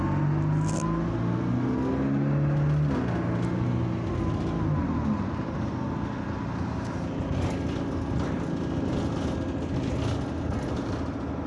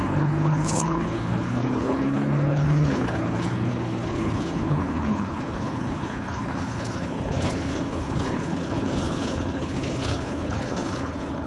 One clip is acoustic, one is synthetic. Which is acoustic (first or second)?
first